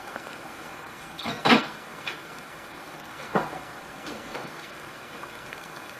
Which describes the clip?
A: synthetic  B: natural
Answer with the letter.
A